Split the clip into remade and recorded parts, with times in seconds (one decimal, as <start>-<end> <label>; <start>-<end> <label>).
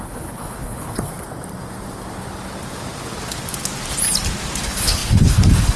0.0-1.1 remade; 1.1-4.6 recorded; 4.6-5.8 remade